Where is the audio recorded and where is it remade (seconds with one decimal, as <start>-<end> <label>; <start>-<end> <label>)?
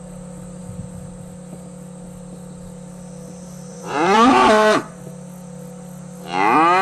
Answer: 0.0-3.7 recorded; 3.7-4.9 remade; 4.9-6.8 recorded